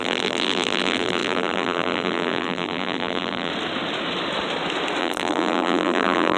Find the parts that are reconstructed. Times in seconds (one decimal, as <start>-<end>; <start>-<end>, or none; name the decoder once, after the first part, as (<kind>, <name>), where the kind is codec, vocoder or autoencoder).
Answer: 0.0-3.5 (vocoder, BigVGAN v2); 5.0-6.4